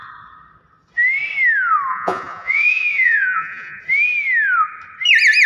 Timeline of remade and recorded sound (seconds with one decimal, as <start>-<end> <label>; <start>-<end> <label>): 0.0-1.9 recorded; 1.9-3.8 remade; 3.8-5.5 recorded